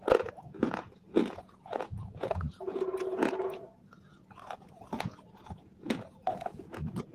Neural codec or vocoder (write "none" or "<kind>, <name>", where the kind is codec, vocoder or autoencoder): vocoder, Vocos